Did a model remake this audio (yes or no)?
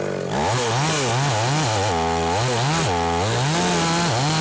no